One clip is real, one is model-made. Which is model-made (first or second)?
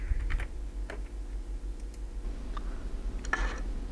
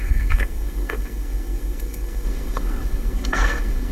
second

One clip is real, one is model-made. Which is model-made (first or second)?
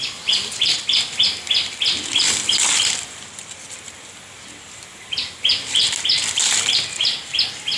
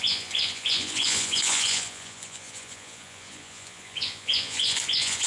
second